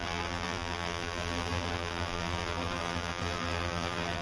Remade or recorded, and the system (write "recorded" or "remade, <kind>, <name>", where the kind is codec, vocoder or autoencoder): remade, vocoder, BigVGAN v2